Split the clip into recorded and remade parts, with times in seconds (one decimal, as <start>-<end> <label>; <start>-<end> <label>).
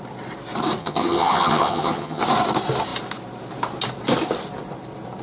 0.0-0.8 recorded; 0.8-2.2 remade; 2.2-5.2 recorded